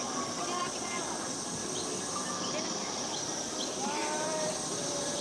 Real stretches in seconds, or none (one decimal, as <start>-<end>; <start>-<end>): 0.0-1.6; 2.3-4.0